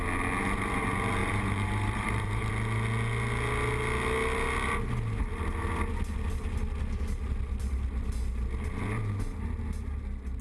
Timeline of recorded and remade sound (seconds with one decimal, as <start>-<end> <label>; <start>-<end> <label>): 0.0-1.2 recorded; 1.2-2.5 remade; 2.5-10.4 recorded